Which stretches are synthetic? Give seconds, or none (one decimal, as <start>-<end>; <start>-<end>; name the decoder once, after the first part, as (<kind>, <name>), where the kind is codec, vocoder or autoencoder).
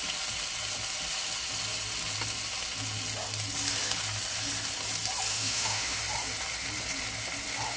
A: 5.3-6.0 (autoencoder, DAC-VAE)